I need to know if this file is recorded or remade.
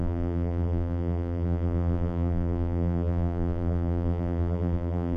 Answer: remade